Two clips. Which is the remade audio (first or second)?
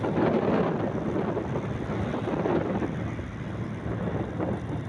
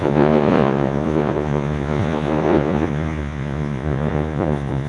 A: second